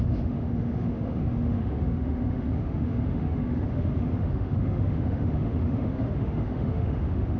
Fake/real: fake